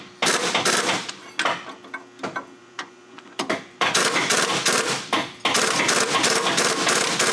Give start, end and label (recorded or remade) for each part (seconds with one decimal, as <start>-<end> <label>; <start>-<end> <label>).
0.0-2.6 recorded; 2.6-4.0 remade; 4.0-7.3 recorded